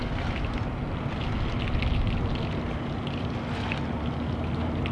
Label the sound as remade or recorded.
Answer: recorded